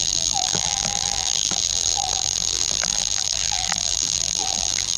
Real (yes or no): no